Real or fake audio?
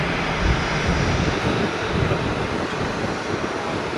real